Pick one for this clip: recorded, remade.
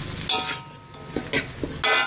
recorded